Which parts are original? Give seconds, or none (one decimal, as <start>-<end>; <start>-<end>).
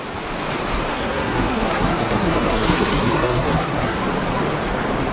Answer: 0.0-0.9; 4.0-5.1